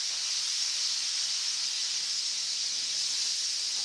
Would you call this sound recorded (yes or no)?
yes